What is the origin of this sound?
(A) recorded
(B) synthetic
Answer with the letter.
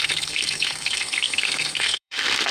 B